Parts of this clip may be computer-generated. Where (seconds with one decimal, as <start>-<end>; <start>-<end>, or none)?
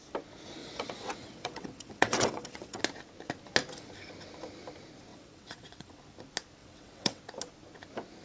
0.6-2.8; 5.1-6.0; 6.6-7.2